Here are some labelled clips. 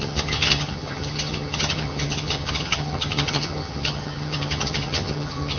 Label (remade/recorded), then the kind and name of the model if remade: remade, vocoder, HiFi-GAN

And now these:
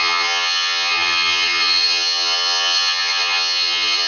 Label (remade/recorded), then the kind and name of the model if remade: remade, vocoder, HiFi-GAN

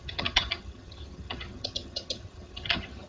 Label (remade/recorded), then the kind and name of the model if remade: remade, vocoder, HiFi-GAN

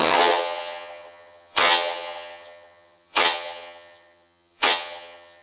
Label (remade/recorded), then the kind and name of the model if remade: remade, vocoder, HiFi-GAN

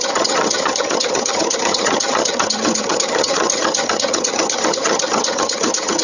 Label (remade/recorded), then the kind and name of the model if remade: remade, vocoder, HiFi-GAN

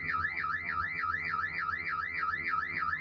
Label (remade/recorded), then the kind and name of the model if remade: remade, vocoder, HiFi-GAN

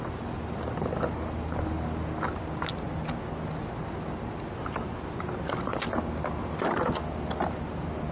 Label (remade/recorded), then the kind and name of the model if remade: recorded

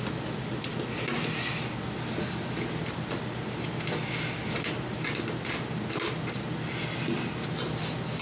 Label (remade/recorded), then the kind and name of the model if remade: recorded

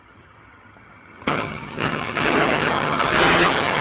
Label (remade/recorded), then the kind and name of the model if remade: remade, vocoder, HiFi-GAN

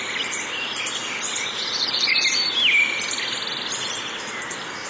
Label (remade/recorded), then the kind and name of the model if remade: recorded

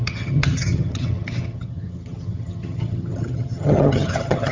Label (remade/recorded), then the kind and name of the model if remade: remade, vocoder, HiFi-GAN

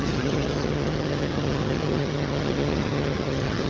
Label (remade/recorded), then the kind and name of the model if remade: remade, vocoder, HiFi-GAN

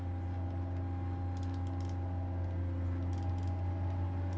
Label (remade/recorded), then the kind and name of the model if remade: recorded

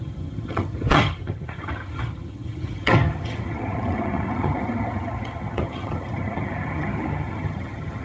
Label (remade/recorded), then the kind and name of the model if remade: remade, vocoder, HiFi-GAN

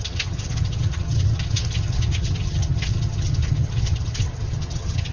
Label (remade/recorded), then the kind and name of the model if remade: remade, vocoder, HiFi-GAN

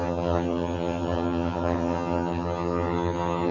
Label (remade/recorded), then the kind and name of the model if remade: remade, vocoder, HiFi-GAN